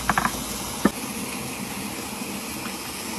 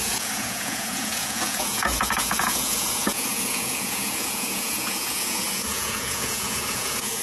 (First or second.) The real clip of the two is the first